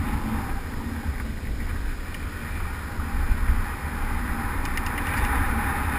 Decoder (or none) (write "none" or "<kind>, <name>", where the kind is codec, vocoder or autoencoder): none